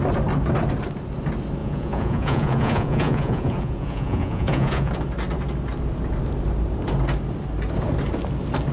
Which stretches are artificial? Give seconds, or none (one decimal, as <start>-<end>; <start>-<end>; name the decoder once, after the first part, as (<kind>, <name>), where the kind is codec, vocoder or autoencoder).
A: 1.6-4.9 (vocoder, Vocos)